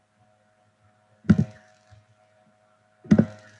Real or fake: real